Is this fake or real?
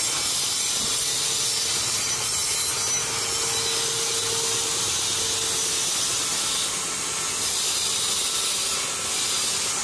real